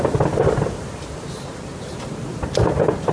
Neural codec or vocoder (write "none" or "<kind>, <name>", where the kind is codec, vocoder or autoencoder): none